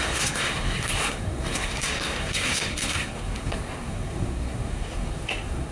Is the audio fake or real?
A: fake